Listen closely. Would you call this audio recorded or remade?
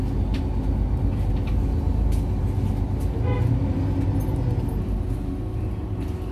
recorded